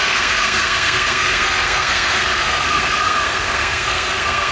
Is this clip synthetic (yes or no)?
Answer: yes